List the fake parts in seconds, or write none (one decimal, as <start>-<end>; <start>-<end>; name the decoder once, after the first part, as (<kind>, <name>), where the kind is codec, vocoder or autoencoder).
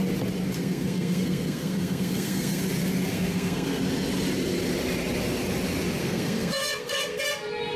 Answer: 0.5-2.6 (codec, SNAC); 3.1-3.8; 6.0-7.2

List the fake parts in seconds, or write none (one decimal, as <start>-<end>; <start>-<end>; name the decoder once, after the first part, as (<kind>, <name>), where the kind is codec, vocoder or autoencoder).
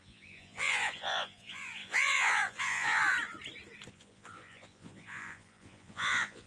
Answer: 0.0-3.0 (vocoder, Vocos); 3.9-6.5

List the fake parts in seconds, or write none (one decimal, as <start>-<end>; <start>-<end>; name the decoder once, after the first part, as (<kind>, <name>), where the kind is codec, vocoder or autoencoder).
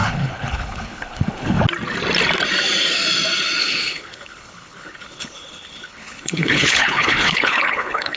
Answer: 0.0-1.6 (codec, HILCodec); 3.6-8.2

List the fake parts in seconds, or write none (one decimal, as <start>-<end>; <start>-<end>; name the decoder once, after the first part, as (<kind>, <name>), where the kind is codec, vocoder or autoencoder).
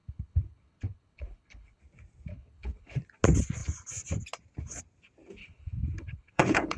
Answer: 0.0-1.8 (codec, HILCodec); 2.3-3.0; 5.4-6.8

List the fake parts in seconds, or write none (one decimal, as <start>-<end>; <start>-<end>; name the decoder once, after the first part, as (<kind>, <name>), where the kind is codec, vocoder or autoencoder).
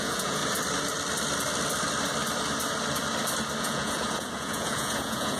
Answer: 0.0-0.4 (vocoder, Vocos); 3.6-5.4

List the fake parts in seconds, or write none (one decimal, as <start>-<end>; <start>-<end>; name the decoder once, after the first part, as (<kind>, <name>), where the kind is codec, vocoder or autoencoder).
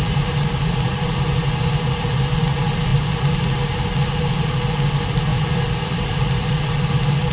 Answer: none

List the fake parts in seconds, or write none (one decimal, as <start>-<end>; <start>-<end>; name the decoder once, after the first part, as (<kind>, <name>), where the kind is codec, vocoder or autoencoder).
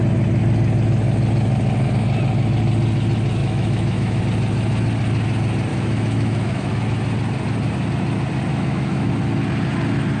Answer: 3.4-4.2 (autoencoder, DAC-VAE); 5.7-6.7; 8.5-9.1